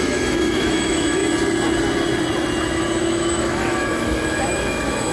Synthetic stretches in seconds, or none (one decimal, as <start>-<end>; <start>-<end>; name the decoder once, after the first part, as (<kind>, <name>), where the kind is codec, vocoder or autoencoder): 0.0-1.2 (autoencoder, DAC-VAE); 3.0-5.1